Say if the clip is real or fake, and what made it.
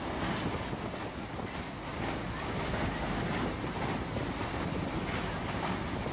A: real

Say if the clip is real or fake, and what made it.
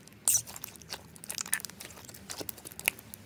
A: real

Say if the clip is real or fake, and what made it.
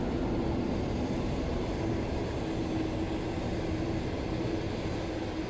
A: real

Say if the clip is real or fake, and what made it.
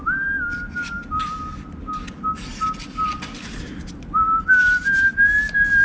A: real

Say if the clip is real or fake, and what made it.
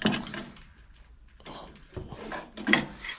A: real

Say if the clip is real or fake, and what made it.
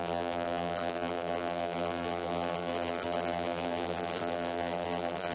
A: fake, vocoder, BigVGAN v2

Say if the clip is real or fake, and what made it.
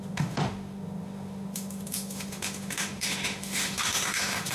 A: fake, autoencoder, DAC-VAE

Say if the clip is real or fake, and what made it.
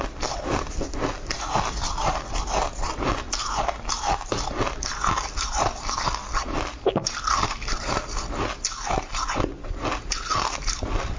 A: real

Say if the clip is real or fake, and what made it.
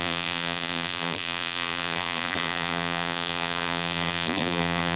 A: fake, vocoder, BigVGAN v2